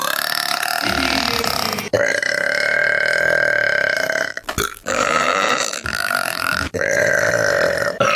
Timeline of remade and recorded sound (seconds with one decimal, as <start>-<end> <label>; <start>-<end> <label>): 0.0-4.3 recorded; 4.3-6.9 remade; 6.9-8.2 recorded